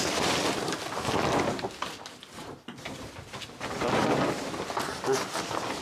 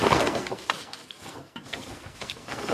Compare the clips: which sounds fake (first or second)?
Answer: second